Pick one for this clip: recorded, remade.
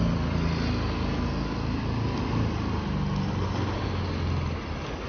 recorded